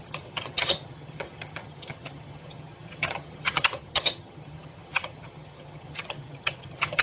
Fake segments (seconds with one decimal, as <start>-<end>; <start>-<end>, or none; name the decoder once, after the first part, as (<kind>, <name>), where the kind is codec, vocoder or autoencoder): 0.0-7.0 (vocoder, HiFi-GAN)